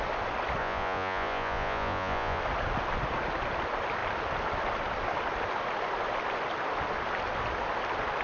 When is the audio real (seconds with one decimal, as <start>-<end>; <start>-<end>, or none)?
0.0-0.6; 2.4-8.2